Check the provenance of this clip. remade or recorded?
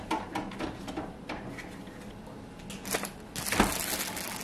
recorded